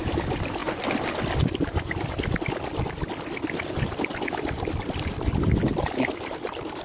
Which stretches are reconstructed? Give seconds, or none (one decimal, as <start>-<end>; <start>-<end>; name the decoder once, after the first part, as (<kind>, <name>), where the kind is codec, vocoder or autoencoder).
none